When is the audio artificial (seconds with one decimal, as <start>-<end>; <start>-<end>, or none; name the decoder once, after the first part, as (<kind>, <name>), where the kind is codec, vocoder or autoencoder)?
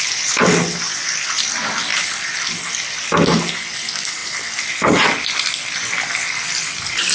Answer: none